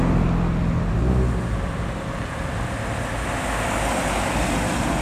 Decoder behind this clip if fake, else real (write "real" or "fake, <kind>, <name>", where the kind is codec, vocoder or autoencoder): real